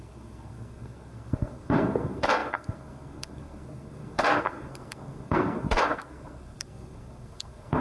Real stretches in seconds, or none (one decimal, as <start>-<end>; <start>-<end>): none